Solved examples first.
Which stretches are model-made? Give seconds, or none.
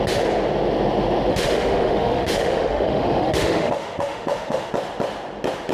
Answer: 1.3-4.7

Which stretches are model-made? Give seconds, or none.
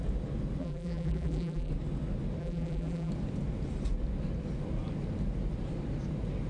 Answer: 0.6-1.7; 2.4-3.1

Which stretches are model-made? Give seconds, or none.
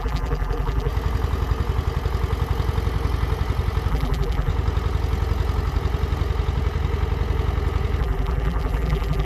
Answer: 0.0-0.9; 3.9-4.5; 8.0-9.3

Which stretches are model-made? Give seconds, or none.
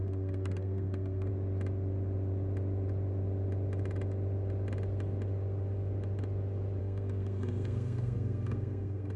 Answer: 0.0-1.3; 6.8-9.2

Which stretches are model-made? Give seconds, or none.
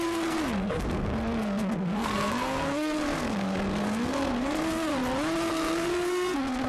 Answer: 0.0-4.9; 5.5-6.7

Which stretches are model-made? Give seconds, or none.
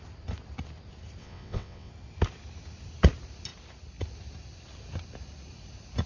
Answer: 1.2-1.9